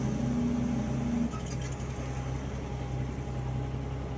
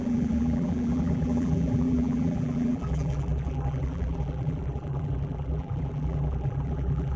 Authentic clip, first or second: first